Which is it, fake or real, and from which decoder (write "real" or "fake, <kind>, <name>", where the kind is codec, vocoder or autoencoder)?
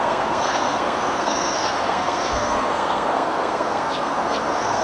fake, codec, SNAC